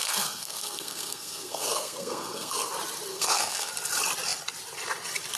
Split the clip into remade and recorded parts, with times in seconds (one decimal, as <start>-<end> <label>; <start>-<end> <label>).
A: 0.0-2.7 remade; 2.7-3.1 recorded; 3.1-3.7 remade; 3.7-5.4 recorded